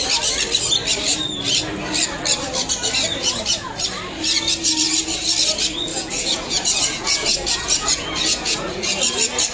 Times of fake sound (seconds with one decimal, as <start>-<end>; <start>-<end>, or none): 3.2-3.8; 5.9-9.0